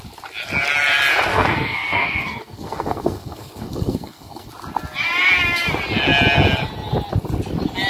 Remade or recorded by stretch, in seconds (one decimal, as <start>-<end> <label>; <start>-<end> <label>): 0.0-1.3 recorded; 1.3-4.5 remade; 4.5-7.9 recorded